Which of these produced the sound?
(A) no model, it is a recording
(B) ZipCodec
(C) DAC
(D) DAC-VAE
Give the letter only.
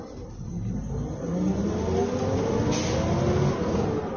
A